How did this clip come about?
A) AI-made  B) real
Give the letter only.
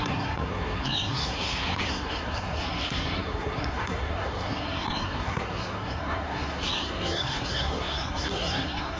A